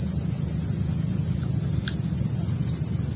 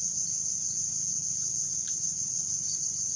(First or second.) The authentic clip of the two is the first